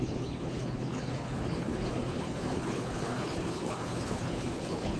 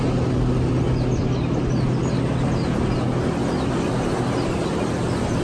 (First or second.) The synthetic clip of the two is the first